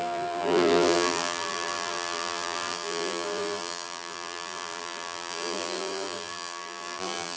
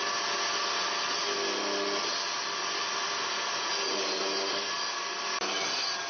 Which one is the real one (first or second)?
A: second